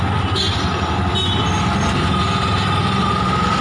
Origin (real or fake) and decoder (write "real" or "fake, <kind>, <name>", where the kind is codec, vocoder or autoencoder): real